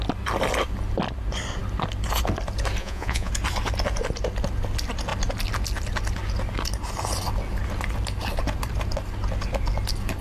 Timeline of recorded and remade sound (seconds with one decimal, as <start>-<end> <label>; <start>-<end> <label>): 0.0-2.8 recorded; 2.8-3.3 remade; 3.3-10.2 recorded